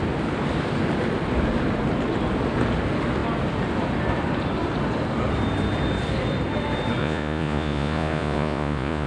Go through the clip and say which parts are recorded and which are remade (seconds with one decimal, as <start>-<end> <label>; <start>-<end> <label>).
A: 0.0-7.0 recorded; 7.0-9.1 remade